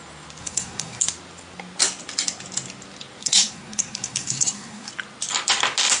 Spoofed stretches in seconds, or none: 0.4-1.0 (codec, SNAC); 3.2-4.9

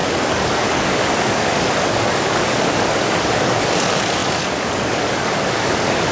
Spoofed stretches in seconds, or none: 0.0-6.1 (codec, DAC)

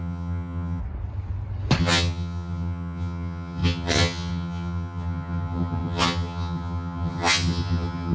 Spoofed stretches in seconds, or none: 0.0-0.8 (vocoder, HiFi-GAN); 1.8-8.1

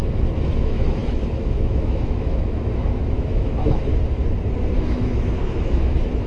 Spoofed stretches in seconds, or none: 0.6-3.9 (autoencoder, DAC-VAE); 4.9-6.3

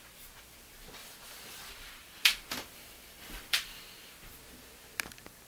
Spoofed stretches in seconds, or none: 1.0-4.3 (vocoder, BigVGAN v2)

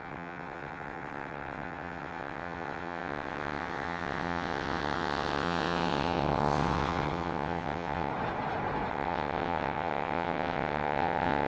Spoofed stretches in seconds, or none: 0.0-8.1 (vocoder, WaveNeXt); 8.9-11.5